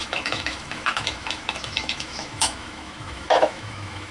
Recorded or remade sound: remade